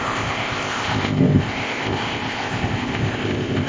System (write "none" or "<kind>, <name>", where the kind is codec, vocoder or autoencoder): codec, ZipCodec